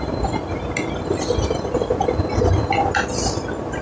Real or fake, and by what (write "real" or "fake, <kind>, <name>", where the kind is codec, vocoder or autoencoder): real